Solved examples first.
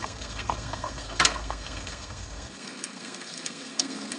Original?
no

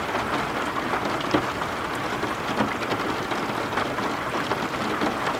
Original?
yes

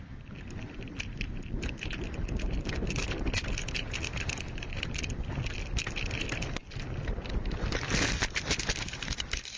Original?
yes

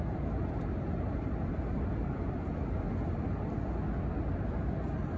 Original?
yes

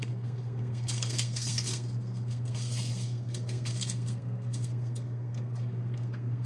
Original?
no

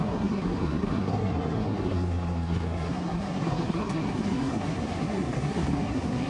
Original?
no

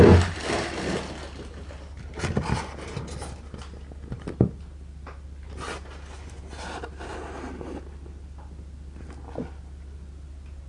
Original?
yes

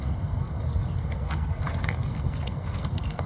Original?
no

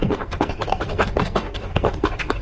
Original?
no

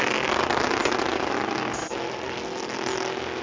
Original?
yes